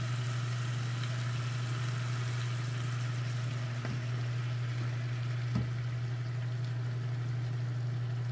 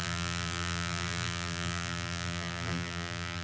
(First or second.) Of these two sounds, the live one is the first